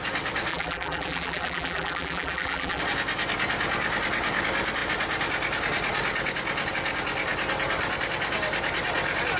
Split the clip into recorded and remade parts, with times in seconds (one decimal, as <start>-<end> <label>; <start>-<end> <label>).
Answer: 0.0-0.5 recorded; 0.5-2.8 remade; 2.8-9.4 recorded